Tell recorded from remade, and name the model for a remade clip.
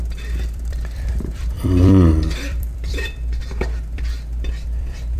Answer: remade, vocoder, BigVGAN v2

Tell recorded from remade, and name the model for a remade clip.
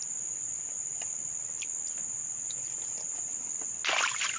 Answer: recorded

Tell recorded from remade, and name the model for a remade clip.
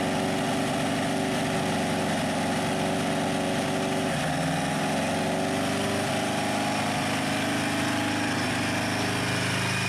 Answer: recorded